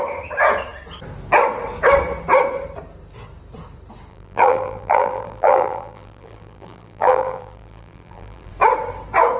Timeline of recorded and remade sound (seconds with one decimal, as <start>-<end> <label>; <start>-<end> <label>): 0.0-4.1 recorded; 4.1-8.5 remade; 8.5-9.4 recorded